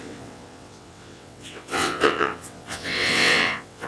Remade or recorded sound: remade